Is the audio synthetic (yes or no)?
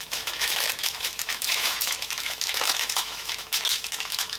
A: yes